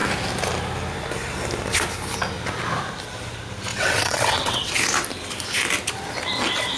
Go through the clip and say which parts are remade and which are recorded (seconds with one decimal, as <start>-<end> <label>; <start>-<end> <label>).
0.0-3.7 recorded; 3.7-4.7 remade; 4.7-6.8 recorded